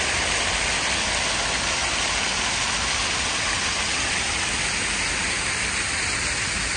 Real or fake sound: real